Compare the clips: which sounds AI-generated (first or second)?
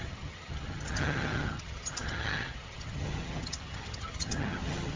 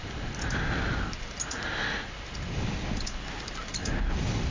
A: first